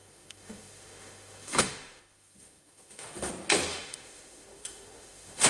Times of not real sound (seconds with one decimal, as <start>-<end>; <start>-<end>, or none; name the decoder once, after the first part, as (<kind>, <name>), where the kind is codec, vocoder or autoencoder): 0.0-3.3 (autoencoder, DAC-VAE); 3.7-5.5

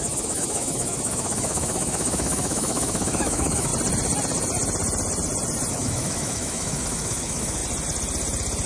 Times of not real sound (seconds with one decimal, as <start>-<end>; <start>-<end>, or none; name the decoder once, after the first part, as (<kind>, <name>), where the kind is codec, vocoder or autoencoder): 0.0-3.7 (autoencoder, DAC-VAE); 5.7-7.6

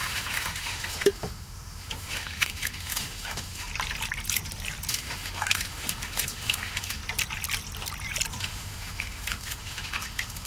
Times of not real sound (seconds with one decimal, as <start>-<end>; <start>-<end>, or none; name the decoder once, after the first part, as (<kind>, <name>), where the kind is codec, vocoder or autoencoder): 0.0-3.7 (autoencoder, DAC-VAE); 4.9-7.0; 8.4-10.5

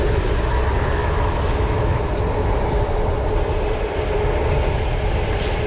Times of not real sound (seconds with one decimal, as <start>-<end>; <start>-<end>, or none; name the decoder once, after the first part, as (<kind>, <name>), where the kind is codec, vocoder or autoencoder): 1.0-2.0 (autoencoder, DAC-VAE)

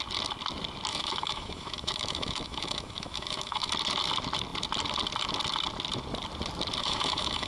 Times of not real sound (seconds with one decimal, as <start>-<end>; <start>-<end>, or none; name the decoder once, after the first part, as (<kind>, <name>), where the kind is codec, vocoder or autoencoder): 0.9-3.7 (autoencoder, DAC-VAE); 6.8-7.5

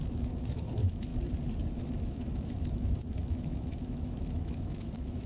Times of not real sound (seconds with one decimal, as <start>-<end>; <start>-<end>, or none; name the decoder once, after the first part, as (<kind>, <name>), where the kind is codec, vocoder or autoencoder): 0.0-1.1 (autoencoder, DAC-VAE); 1.8-5.3

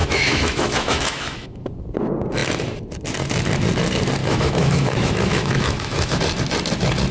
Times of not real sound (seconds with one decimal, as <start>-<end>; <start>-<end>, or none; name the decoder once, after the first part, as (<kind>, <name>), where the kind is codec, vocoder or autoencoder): 0.0-1.7 (autoencoder, DAC-VAE); 4.2-6.2

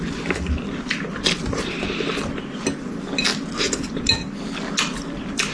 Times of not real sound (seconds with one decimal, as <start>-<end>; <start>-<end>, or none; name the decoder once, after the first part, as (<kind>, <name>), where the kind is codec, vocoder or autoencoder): none